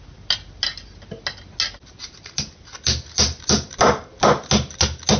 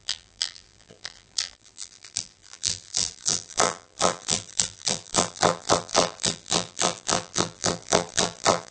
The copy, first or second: second